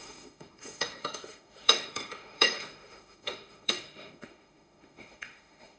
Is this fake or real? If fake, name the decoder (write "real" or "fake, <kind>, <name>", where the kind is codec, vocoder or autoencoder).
fake, autoencoder, DAC-VAE